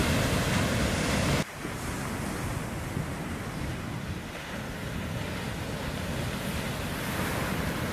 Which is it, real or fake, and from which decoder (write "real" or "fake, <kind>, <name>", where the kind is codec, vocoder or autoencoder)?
real